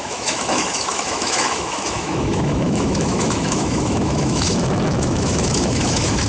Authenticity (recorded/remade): remade